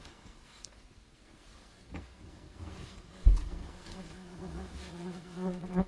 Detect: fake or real fake